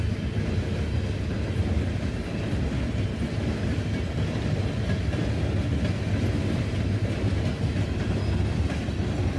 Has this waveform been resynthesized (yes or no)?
no